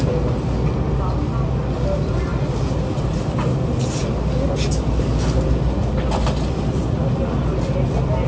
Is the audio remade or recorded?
recorded